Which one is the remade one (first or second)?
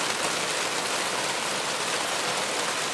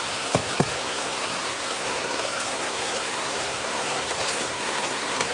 second